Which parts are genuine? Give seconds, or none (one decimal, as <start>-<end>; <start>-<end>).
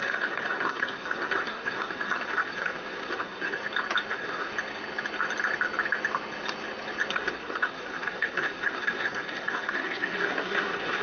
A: 3.6-4.1; 4.5-7.1